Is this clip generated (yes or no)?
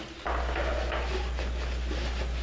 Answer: no